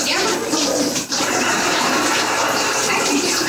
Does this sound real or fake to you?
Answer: fake